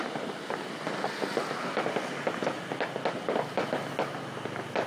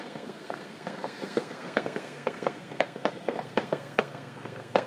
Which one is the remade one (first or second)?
second